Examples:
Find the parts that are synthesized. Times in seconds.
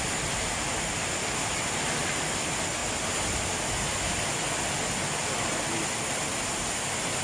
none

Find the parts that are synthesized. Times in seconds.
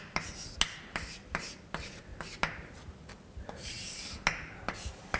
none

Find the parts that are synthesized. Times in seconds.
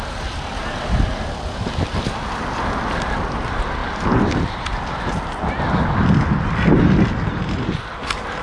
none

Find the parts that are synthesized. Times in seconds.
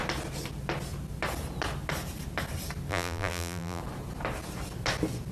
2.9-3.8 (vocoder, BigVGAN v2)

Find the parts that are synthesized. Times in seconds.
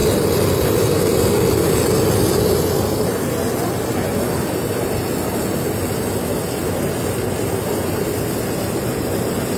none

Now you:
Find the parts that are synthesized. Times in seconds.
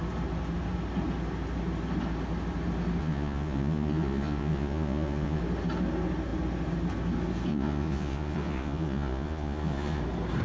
3.0-5.4 (vocoder, Vocos); 7.5-10.0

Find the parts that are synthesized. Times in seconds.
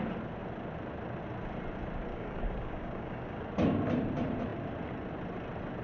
2.1-3.4 (codec, DAC)